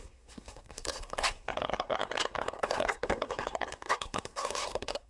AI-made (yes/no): yes